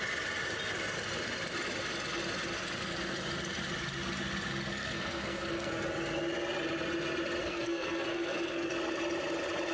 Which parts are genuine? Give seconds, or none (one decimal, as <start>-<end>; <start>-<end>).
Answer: 0.0-4.7; 5.7-7.4; 8.7-9.7